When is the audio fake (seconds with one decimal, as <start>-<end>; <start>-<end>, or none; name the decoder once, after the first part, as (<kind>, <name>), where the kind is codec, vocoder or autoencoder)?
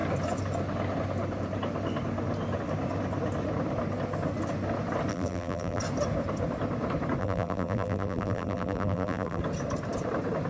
5.1-5.8 (vocoder, BigVGAN v2); 7.2-9.4